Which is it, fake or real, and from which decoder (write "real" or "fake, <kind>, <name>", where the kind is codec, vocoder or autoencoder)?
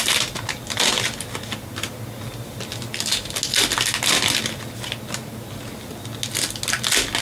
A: real